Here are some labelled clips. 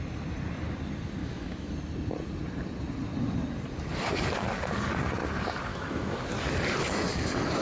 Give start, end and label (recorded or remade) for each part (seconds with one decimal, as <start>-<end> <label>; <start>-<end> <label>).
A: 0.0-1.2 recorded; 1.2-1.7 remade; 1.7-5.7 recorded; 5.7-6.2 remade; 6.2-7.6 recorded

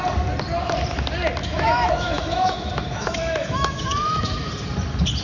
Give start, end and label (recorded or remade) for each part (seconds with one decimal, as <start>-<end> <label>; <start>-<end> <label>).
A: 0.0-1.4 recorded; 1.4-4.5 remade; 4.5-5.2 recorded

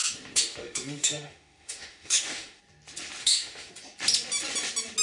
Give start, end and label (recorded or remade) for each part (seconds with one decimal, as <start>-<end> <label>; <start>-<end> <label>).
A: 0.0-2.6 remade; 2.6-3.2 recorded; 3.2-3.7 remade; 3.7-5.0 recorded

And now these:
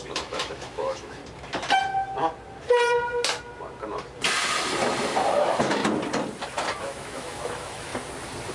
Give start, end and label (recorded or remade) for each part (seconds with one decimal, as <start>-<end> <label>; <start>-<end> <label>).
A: 0.0-1.2 remade; 1.2-5.3 recorded; 5.3-5.8 remade; 5.8-6.8 recorded; 6.8-7.9 remade; 7.9-8.5 recorded

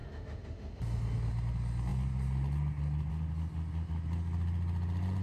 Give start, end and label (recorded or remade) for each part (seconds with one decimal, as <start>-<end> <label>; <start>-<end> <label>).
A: 0.0-0.8 remade; 0.8-5.2 recorded

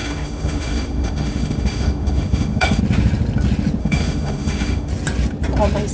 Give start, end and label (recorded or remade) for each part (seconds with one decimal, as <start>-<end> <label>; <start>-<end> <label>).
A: 0.0-2.8 remade; 2.8-3.8 recorded; 3.8-4.9 remade; 4.9-5.9 recorded

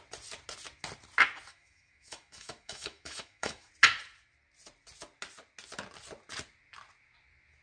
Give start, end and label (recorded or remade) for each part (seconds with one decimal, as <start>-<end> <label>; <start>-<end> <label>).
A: 0.0-1.5 recorded; 1.5-3.7 remade; 3.7-7.6 recorded

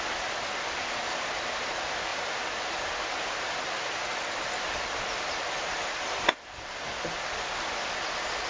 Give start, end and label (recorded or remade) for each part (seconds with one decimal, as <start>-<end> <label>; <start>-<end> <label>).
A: 0.0-8.5 recorded